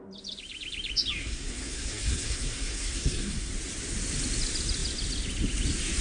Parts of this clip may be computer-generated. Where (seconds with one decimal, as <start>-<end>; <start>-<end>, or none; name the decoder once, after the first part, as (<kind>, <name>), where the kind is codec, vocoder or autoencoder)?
1.2-3.5 (codec, SNAC)